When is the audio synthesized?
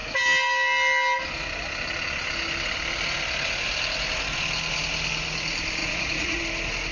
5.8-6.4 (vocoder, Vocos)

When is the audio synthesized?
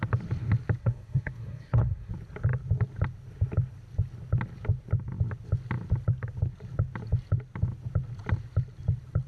0.8-2.1 (codec, SNAC)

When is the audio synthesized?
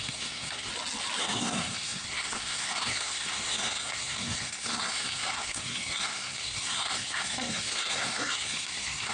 0.0-0.7 (codec, SNAC); 1.2-9.1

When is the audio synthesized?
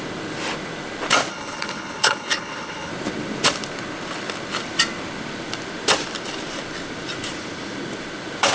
1.3-2.9 (codec, HILCodec)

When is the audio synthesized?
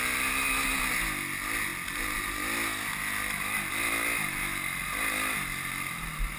none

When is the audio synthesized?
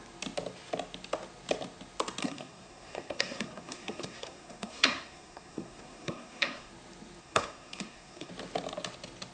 2.2-6.7 (codec, SNAC); 7.2-8.3